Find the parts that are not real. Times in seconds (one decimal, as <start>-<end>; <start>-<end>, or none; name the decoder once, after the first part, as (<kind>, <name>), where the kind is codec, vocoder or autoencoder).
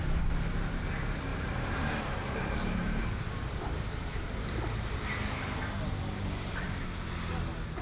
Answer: 1.3-4.7 (vocoder, BigVGAN v2)